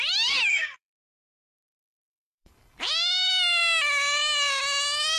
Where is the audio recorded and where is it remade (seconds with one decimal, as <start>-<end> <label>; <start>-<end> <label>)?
0.0-0.5 recorded; 0.5-2.5 remade; 2.5-5.2 recorded